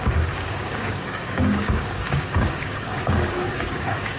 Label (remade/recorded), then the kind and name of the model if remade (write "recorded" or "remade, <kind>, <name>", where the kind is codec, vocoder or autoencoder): remade, codec, DAC